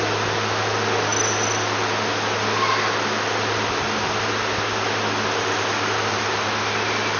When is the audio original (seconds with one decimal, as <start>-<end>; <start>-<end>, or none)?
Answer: 0.0-7.2